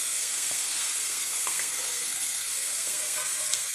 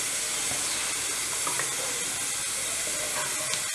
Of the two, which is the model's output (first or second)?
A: first